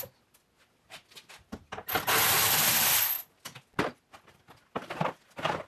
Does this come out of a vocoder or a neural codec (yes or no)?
no